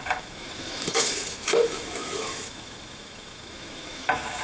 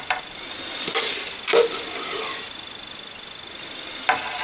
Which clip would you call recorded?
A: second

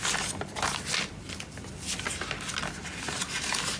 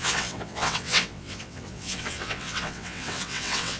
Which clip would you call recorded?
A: first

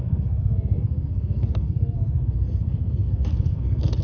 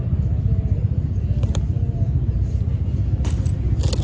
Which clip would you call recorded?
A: second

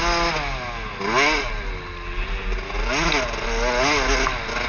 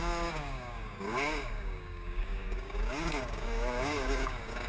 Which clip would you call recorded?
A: first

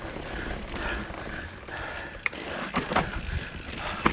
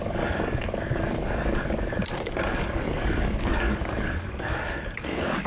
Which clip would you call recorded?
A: first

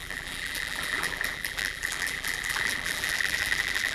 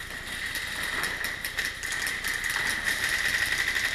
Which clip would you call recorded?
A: second